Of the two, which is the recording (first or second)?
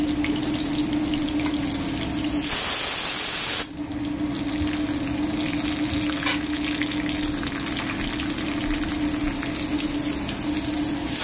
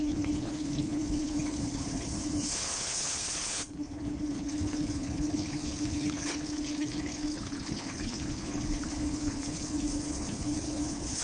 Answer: first